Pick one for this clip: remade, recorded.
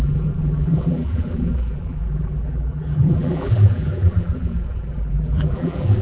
remade